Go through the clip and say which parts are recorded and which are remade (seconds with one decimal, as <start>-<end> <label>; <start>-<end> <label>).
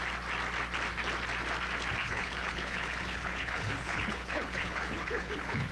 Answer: 0.0-2.0 recorded; 2.0-5.7 remade